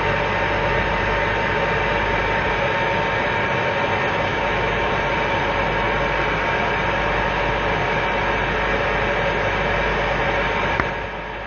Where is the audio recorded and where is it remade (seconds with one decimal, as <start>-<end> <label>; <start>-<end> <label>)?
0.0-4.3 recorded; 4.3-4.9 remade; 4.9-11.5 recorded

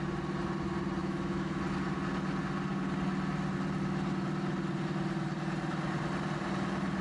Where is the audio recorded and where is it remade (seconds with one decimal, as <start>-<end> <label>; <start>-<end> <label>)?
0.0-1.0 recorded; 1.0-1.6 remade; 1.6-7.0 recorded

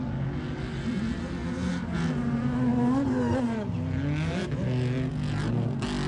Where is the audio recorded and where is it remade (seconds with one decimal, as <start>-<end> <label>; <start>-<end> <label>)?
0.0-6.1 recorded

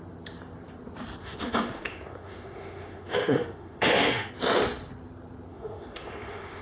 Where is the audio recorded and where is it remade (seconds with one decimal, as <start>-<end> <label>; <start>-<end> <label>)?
0.0-1.2 recorded; 1.2-4.3 remade; 4.3-5.5 recorded; 5.5-6.6 remade